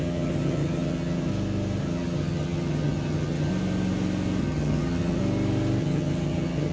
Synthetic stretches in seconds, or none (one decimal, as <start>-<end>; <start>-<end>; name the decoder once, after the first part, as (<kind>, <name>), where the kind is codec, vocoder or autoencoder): 0.0-1.3 (vocoder, HiFi-GAN); 1.8-3.5; 4.4-5.2; 5.8-6.7